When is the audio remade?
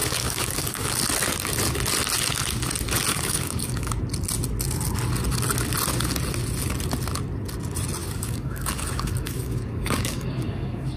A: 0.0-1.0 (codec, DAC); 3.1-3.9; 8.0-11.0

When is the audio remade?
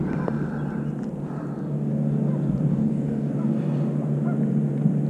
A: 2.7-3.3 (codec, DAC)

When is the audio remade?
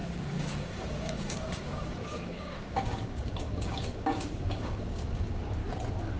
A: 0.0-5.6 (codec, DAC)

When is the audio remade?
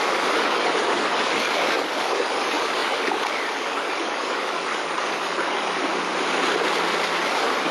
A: 0.0-5.9 (codec, DAC); 7.2-7.7